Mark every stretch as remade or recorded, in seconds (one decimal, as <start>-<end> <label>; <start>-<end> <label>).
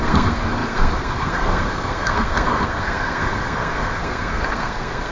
0.0-5.1 remade